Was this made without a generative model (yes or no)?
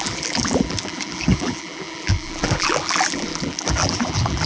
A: no